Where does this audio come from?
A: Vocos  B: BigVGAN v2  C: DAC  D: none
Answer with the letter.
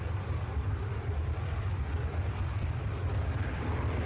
D